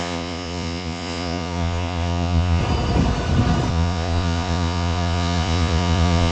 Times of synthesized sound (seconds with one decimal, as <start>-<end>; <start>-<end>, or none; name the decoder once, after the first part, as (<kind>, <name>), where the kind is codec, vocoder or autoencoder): 0.0-2.6 (vocoder, Vocos); 3.7-6.3